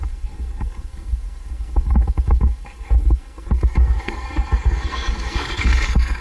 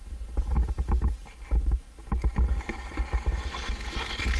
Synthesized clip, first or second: first